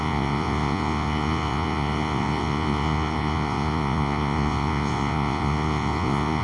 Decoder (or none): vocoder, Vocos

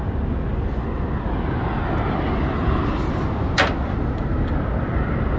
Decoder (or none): none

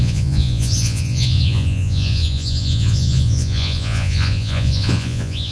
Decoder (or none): vocoder, Vocos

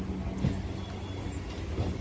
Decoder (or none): none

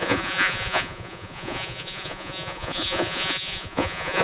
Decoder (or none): vocoder, Vocos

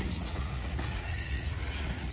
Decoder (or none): vocoder, Vocos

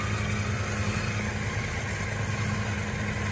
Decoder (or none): none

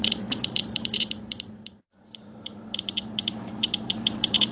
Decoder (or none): vocoder, Vocos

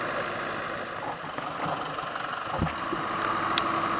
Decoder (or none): none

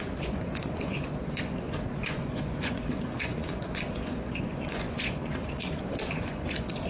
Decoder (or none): vocoder, Vocos